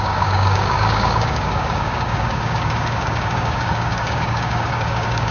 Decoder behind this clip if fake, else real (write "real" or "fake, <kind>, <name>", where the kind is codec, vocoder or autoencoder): fake, codec, DAC